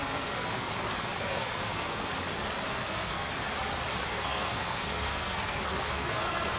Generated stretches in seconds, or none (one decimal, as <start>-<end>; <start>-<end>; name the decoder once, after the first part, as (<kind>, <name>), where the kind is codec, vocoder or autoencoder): 0.0-0.7 (codec, SNAC); 1.2-2.1; 2.7-3.3; 4.1-6.6